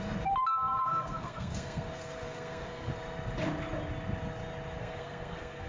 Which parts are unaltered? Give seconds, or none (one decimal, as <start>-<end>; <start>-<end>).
0.0-0.8; 2.9-4.8